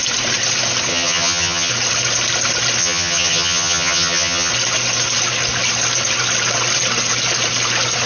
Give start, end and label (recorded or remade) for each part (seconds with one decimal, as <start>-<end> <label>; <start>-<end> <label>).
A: 0.0-0.9 recorded; 0.9-1.7 remade; 1.7-2.8 recorded; 2.8-4.5 remade; 4.5-8.1 recorded